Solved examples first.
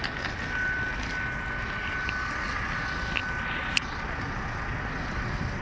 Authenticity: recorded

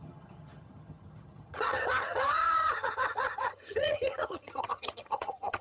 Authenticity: remade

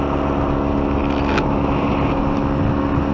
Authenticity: recorded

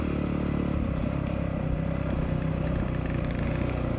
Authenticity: recorded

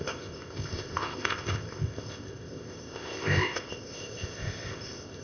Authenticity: remade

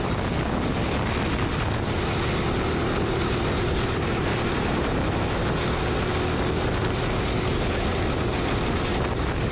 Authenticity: recorded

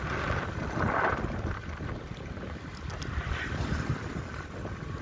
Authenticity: recorded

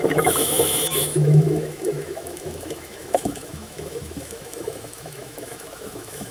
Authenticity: remade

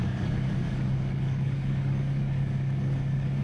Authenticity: remade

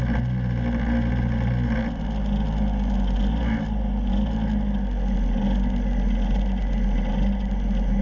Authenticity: recorded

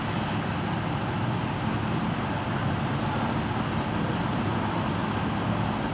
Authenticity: recorded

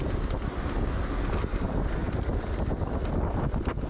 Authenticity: recorded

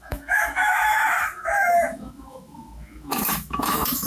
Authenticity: remade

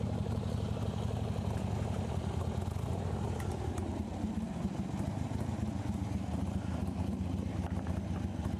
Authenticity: recorded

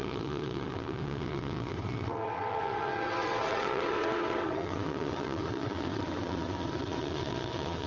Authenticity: remade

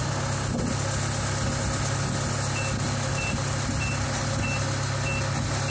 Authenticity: recorded